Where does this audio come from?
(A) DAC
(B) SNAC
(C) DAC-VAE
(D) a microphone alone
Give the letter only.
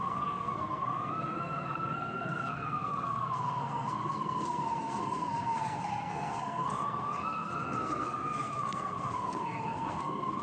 B